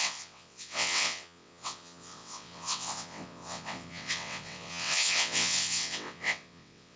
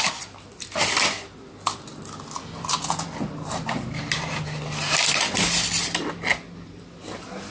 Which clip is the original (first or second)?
second